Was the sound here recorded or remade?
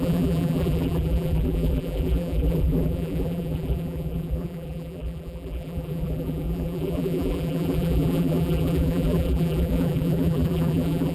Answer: remade